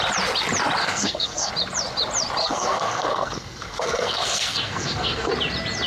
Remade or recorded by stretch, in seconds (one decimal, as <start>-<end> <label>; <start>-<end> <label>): 0.0-0.8 recorded; 0.8-1.5 remade; 1.5-2.4 recorded; 2.4-5.3 remade; 5.3-5.9 recorded